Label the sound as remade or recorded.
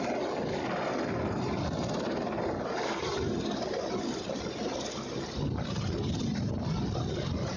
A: recorded